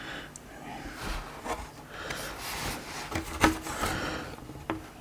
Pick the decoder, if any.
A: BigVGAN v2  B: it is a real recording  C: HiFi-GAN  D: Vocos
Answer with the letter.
B